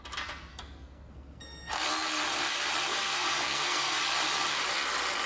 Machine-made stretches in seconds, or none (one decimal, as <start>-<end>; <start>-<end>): 0.5-1.7; 2.9-4.0